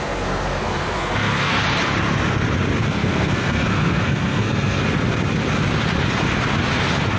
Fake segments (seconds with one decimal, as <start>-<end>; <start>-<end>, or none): 0.0-1.6; 2.8-4.8